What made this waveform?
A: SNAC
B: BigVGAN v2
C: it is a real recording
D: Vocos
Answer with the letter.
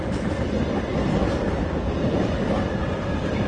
C